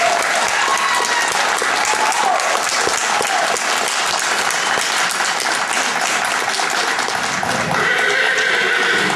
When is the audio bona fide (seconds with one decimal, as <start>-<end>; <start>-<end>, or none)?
0.0-9.2